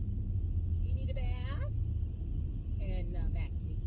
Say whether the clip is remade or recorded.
recorded